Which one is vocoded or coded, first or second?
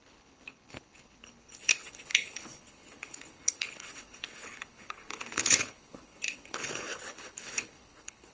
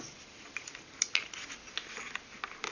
first